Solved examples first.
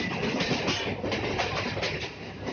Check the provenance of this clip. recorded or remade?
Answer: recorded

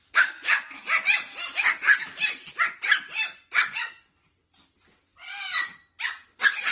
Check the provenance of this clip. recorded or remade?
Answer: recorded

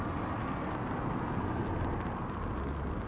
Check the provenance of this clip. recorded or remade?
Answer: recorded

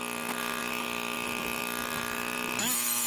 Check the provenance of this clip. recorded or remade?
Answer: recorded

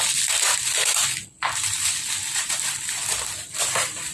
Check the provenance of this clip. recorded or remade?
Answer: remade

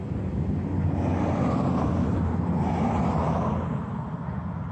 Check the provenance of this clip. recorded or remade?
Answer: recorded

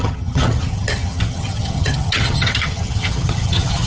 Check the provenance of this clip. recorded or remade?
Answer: remade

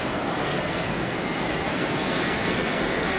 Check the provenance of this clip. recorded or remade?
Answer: remade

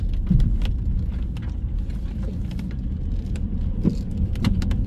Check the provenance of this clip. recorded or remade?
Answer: recorded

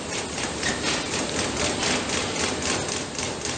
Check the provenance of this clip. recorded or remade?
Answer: recorded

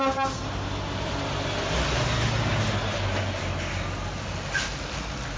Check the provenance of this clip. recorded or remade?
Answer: recorded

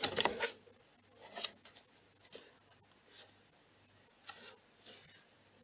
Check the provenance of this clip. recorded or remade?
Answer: recorded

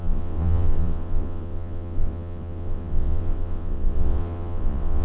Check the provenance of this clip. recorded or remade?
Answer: remade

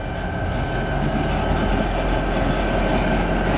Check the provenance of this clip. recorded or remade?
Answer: recorded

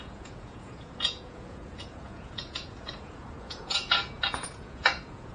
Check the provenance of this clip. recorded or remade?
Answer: remade